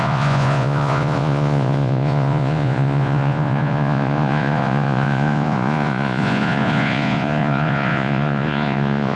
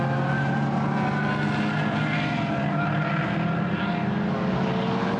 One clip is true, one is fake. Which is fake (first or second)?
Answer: first